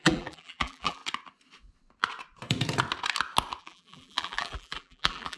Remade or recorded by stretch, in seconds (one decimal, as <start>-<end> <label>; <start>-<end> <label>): 0.0-1.0 remade; 1.0-3.6 recorded; 3.6-5.4 remade